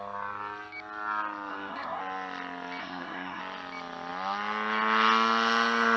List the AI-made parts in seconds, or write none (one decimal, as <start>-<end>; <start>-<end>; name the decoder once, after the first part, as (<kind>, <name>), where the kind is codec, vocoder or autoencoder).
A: 1.5-2.0 (codec, SNAC); 2.8-3.4